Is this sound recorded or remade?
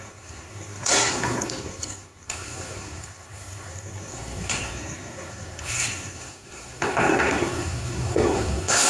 remade